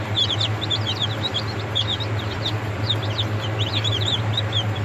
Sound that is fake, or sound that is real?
real